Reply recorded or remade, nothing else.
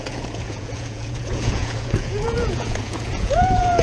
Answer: remade